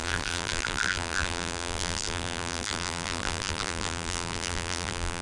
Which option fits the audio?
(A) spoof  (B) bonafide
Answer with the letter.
A